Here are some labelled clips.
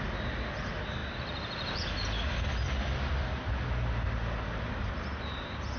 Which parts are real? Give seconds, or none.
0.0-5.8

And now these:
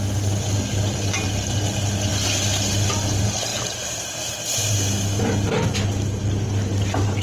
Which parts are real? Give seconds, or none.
0.0-3.5; 5.2-7.2

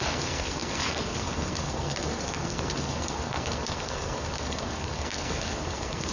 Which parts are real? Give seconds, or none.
none